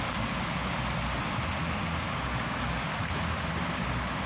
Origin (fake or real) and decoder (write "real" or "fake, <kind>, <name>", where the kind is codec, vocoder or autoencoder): real